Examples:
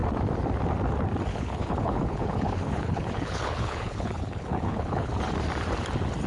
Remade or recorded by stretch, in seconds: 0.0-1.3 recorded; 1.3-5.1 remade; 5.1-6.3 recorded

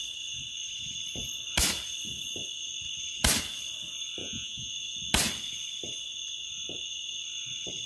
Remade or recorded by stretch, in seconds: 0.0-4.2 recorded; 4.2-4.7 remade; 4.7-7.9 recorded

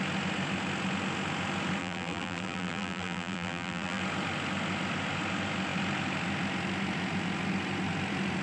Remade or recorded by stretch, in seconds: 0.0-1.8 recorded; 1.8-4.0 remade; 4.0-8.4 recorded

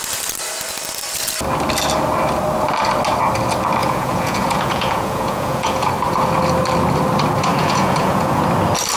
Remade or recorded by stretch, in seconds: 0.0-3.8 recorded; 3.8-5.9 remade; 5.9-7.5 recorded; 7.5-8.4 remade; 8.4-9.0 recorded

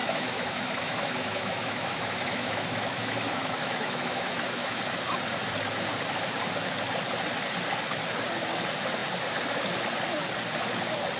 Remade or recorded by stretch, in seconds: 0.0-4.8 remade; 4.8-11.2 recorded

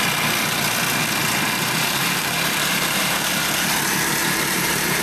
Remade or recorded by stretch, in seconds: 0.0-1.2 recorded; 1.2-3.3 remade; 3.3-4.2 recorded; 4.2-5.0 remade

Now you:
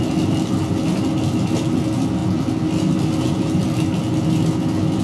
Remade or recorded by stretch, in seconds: 0.0-5.0 recorded

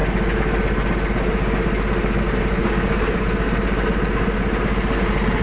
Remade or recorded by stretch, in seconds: 0.0-2.6 recorded; 2.6-3.2 remade; 3.2-5.4 recorded